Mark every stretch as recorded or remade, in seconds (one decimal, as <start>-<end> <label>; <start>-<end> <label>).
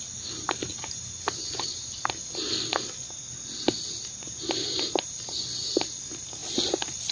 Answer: 0.0-7.1 recorded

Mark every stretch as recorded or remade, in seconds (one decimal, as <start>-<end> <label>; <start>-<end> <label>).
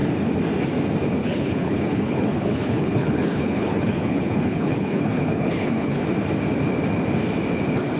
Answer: 0.0-1.2 recorded; 1.2-6.0 remade; 6.0-8.0 recorded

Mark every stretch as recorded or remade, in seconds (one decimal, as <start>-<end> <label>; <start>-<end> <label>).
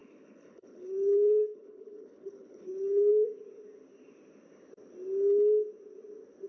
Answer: 0.0-3.1 remade; 3.1-6.5 recorded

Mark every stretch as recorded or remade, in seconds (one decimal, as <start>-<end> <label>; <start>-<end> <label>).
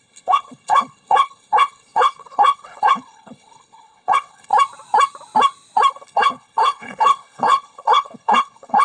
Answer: 0.0-4.5 remade; 4.5-5.9 recorded; 5.9-8.8 remade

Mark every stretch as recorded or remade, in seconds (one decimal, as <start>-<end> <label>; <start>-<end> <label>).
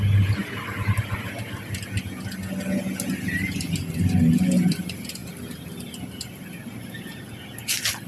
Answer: 0.0-8.1 recorded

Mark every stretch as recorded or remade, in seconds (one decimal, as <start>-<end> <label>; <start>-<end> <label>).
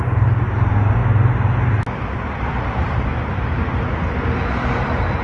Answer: 0.0-5.2 recorded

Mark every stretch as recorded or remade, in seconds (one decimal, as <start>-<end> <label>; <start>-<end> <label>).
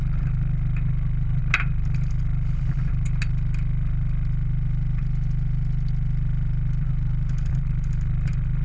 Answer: 0.0-8.6 recorded